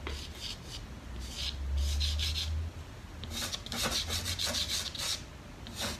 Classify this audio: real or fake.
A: real